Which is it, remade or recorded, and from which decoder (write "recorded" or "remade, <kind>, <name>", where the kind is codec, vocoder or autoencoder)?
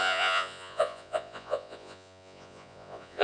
remade, vocoder, Vocos